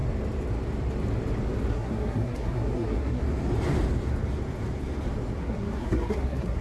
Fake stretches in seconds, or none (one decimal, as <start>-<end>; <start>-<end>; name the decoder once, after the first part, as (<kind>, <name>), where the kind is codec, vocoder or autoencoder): 1.7-3.2 (codec, SNAC); 5.4-6.6